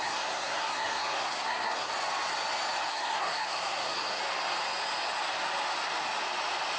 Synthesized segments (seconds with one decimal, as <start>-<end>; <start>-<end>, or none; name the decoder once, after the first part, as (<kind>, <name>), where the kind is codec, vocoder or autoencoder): 0.0-1.9 (codec, SNAC); 2.9-4.2